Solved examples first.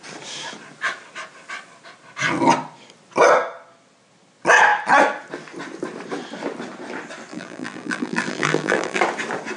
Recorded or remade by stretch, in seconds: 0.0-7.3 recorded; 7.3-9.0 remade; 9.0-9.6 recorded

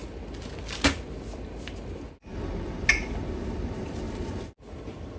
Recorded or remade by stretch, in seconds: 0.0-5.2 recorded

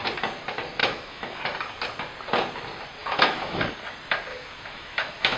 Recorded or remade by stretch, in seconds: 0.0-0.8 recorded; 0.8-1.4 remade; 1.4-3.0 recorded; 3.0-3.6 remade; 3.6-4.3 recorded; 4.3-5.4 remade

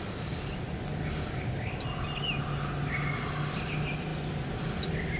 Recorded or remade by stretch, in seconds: 0.0-5.2 recorded

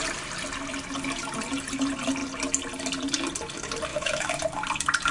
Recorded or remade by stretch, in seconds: 0.0-3.9 recorded; 3.9-4.4 remade; 4.4-5.1 recorded

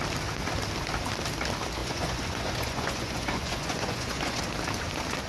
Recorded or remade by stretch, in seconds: 0.0-1.8 recorded; 1.8-4.4 remade; 4.4-5.3 recorded

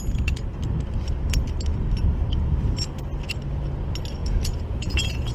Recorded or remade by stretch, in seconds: 0.0-4.2 recorded; 4.2-5.3 remade

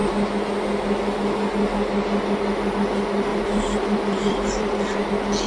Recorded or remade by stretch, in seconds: 0.0-3.3 recorded; 3.3-5.1 remade; 5.1-5.5 recorded